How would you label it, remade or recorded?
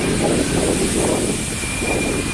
remade